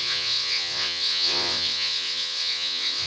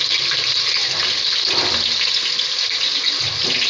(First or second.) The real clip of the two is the second